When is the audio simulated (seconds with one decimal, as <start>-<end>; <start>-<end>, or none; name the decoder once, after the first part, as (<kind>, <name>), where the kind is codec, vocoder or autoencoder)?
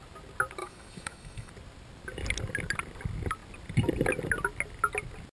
0.6-1.5 (autoencoder, DAC-VAE)